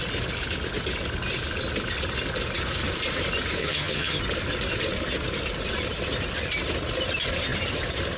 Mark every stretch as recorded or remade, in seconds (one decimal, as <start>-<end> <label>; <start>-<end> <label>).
0.0-3.6 recorded; 3.6-4.2 remade; 4.2-8.2 recorded